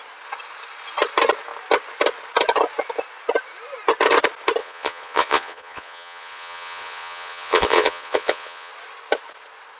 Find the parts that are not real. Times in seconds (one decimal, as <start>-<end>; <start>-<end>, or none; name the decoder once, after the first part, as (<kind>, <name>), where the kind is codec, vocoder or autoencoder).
4.6-8.7 (vocoder, Vocos)